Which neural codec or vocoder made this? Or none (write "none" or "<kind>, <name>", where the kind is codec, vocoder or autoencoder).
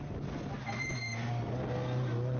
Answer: none